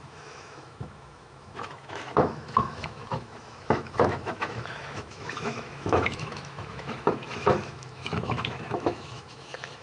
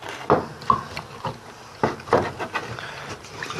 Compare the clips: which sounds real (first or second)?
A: second